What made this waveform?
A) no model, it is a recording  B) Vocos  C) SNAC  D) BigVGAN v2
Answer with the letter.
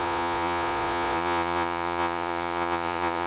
B